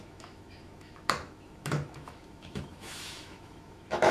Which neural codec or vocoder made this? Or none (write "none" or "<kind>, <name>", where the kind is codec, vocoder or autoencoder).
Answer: autoencoder, DAC-VAE